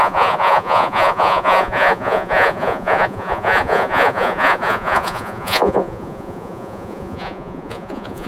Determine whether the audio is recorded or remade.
remade